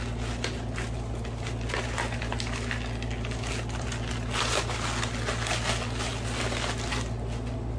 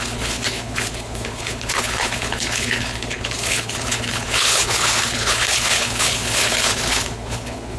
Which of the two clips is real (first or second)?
first